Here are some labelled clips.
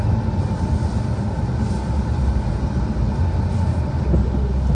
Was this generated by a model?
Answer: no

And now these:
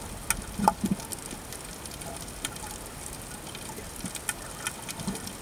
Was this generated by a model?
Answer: no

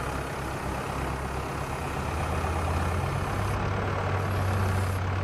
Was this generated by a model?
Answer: no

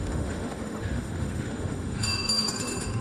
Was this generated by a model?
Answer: yes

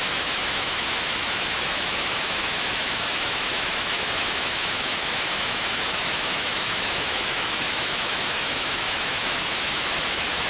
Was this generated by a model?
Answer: yes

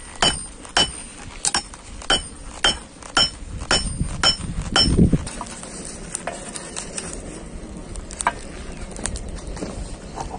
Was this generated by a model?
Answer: no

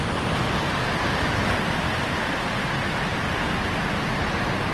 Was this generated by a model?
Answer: no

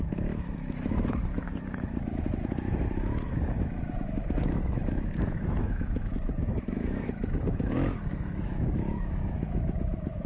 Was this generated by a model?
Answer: yes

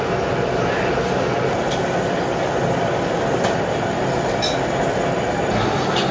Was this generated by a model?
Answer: no